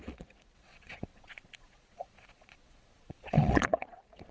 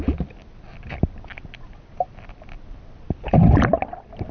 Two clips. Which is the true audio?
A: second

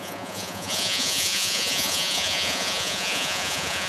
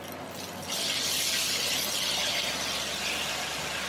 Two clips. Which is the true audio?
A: second